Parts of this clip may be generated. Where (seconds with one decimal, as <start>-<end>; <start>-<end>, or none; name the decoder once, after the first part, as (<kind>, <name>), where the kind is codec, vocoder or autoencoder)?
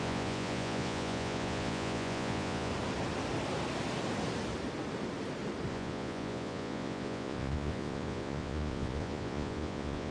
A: 0.0-2.7 (vocoder, Vocos); 5.7-10.1